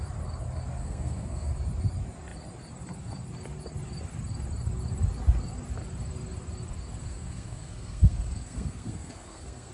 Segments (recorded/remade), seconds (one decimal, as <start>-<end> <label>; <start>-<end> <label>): 0.0-0.8 recorded; 0.8-1.5 remade; 1.5-7.0 recorded; 7.0-9.7 remade